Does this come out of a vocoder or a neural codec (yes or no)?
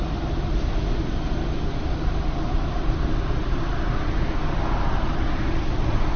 no